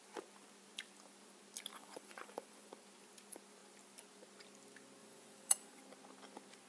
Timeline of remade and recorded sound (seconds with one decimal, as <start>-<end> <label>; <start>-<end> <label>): 0.0-1.7 recorded; 1.7-2.7 remade; 2.7-5.0 recorded; 5.0-5.8 remade; 5.8-6.7 recorded